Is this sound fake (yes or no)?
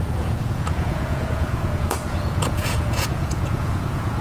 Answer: yes